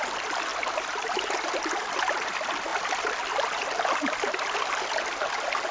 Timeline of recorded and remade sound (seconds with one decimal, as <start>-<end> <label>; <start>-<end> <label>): 0.0-0.5 recorded; 0.5-1.8 remade; 1.8-2.7 recorded; 2.7-3.6 remade; 3.6-5.7 recorded